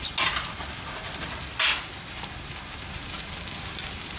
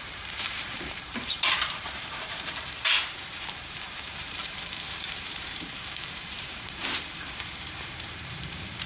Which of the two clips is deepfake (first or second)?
second